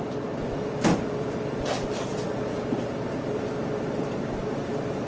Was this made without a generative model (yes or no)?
no